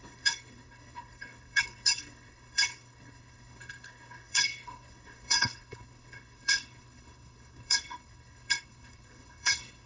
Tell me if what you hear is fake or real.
fake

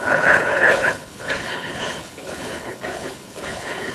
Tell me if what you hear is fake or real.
fake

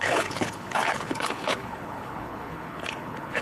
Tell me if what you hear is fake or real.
fake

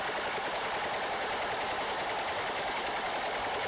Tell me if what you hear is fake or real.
real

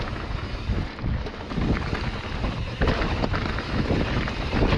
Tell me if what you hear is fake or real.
real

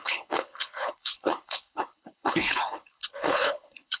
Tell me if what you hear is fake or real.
fake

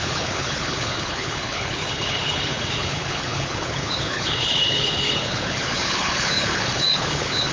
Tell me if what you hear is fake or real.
fake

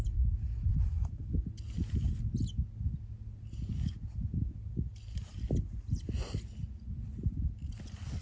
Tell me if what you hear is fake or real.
real